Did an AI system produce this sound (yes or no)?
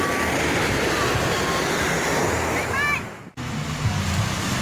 no